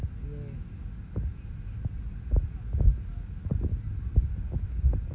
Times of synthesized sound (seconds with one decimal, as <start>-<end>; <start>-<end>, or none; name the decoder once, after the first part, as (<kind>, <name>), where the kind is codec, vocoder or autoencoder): none